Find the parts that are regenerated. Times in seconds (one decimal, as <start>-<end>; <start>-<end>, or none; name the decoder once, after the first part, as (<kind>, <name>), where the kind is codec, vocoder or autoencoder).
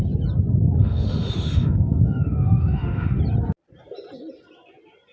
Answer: 0.8-3.2 (autoencoder, DAC-VAE)